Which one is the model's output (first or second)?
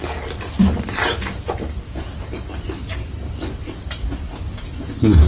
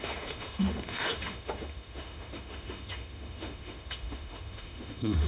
second